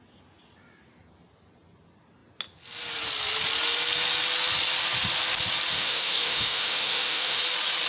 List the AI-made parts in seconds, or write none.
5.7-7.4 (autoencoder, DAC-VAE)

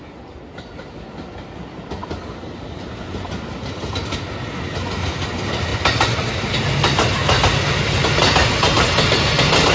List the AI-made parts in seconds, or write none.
none

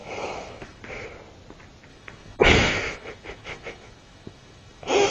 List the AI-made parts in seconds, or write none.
0.0-0.8 (autoencoder, DAC-VAE); 1.9-5.1

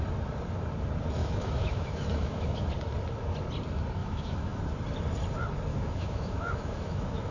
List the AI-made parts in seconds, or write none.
1.2-2.7 (autoencoder, DAC-VAE); 4.0-4.6; 5.7-7.3

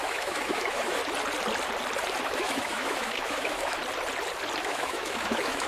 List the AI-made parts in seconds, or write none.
0.0-1.0 (autoencoder, DAC-VAE); 2.2-3.8; 4.6-5.7

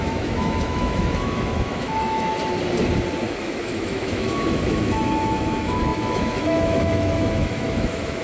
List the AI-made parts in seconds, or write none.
0.0-2.3 (autoencoder, DAC-VAE); 3.4-8.2

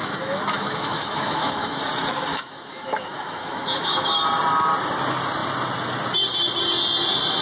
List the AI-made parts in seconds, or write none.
0.0-1.8 (autoencoder, DAC-VAE); 2.3-4.2

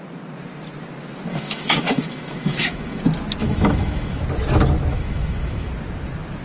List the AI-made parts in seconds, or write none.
1.3-3.0 (autoencoder, DAC-VAE); 3.4-4.2; 4.9-5.7